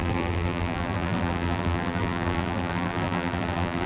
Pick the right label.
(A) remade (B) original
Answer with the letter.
A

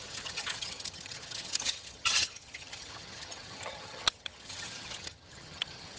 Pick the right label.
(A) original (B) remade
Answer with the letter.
B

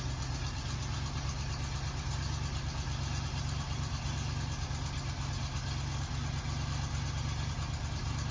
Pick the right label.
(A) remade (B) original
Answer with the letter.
B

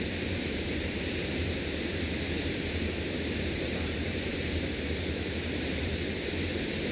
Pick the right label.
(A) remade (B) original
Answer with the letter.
A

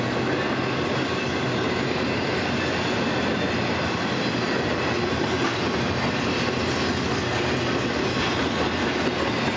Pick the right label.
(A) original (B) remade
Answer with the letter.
A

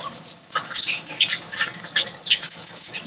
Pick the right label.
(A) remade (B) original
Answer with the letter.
A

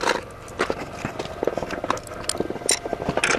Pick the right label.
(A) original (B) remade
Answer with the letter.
A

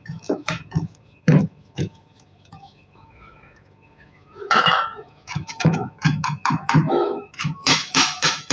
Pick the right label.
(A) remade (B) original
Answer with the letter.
A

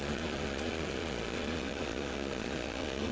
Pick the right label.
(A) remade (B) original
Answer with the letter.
A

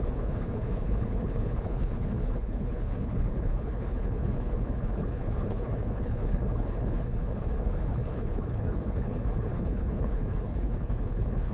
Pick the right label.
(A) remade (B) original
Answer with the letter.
A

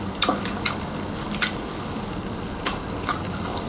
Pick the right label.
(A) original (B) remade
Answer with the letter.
B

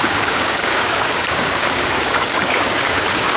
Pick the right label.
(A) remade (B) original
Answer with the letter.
A